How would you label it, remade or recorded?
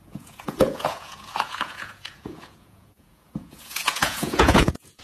remade